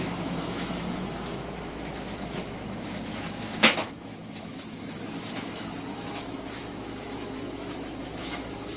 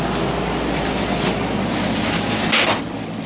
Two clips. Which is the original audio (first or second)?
second